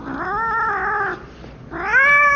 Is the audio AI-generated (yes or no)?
no